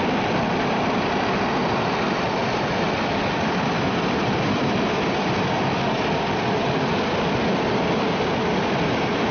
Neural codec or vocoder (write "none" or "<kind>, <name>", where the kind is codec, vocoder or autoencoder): none